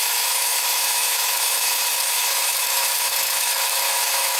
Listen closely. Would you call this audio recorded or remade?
remade